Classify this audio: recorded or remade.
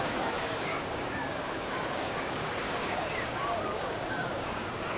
remade